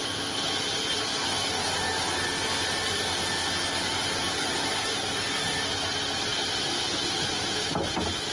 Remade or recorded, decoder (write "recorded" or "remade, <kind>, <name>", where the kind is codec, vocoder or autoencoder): recorded